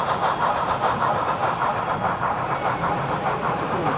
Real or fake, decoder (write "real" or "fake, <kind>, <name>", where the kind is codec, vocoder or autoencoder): fake, vocoder, BigVGAN v2